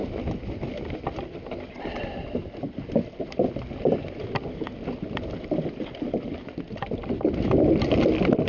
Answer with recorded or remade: recorded